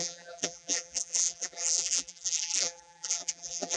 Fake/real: fake